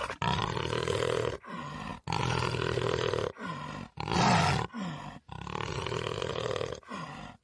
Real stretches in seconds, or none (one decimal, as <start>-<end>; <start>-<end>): 0.0-7.4